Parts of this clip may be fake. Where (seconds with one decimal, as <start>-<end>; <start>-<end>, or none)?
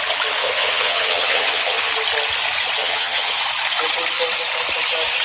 0.4-1.9; 2.8-3.4